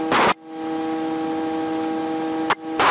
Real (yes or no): yes